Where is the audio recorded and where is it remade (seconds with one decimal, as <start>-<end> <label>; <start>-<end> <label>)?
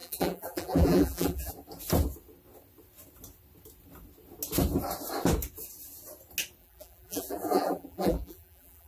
0.0-1.5 remade; 1.5-6.6 recorded; 6.6-8.9 remade